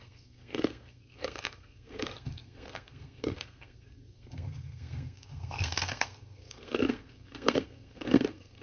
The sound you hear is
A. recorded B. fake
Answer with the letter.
B